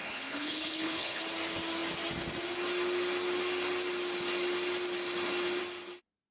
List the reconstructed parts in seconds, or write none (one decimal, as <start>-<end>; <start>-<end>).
0.0-1.2